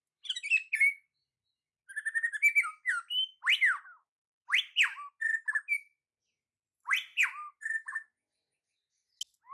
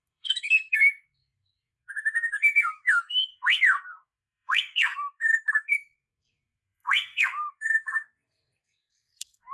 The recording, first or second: first